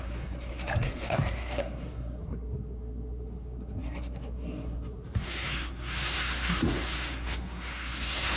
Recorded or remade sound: remade